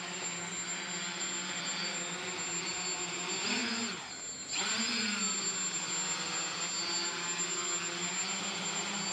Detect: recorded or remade recorded